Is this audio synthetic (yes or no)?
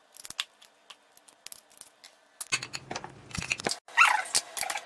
no